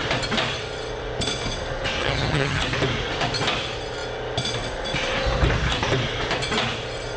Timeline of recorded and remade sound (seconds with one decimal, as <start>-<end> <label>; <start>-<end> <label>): 0.0-2.0 recorded; 2.0-2.6 remade; 2.6-7.2 recorded